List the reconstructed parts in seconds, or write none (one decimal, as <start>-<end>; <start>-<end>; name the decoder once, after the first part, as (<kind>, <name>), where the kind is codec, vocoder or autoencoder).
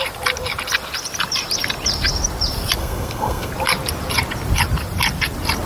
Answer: 2.8-3.5 (codec, SNAC)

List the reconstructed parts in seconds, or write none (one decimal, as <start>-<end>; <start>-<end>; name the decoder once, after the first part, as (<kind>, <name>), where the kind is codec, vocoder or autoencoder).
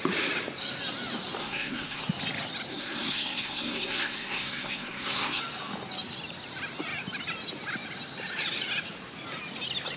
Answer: 1.4-2.0 (codec, SNAC); 2.7-5.4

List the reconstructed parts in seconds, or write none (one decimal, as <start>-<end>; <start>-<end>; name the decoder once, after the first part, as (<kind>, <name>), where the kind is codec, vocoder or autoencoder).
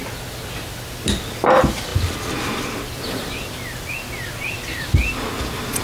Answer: none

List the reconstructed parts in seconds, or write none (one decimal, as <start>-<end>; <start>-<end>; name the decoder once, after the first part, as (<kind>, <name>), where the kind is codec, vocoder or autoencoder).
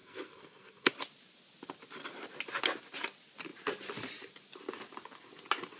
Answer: 0.0-0.9 (codec, SNAC)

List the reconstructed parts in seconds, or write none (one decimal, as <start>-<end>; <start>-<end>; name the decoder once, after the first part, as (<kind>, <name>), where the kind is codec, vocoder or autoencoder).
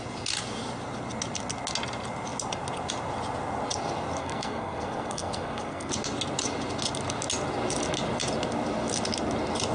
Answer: 4.2-5.9 (codec, SNAC)